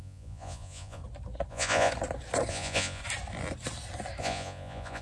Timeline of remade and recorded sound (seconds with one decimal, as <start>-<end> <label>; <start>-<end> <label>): 0.0-1.0 remade; 1.0-1.5 recorded; 1.5-1.9 remade; 1.9-2.5 recorded; 2.5-3.0 remade; 3.0-4.2 recorded; 4.2-5.0 remade